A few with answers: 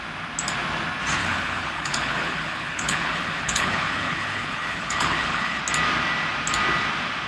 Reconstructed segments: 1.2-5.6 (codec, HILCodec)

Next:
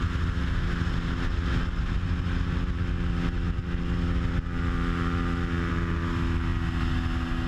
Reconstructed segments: none

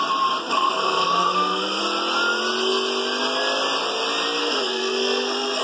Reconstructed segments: 0.4-1.8 (codec, SNAC); 4.4-5.6

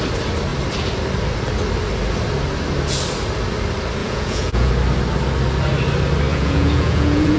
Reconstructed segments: 4.0-4.7 (vocoder, Vocos); 6.3-7.4

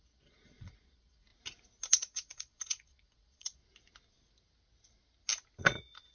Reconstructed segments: 0.0-1.3 (vocoder, Vocos); 1.9-3.6; 5.6-6.1

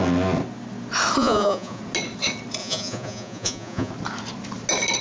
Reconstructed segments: 1.2-1.8 (vocoder, Vocos); 2.6-3.9